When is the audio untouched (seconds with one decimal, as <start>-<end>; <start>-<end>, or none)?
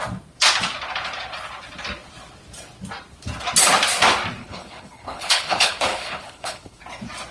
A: 0.0-4.4; 6.8-7.3